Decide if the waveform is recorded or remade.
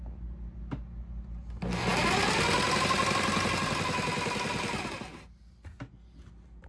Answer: recorded